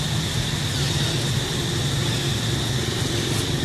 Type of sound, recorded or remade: recorded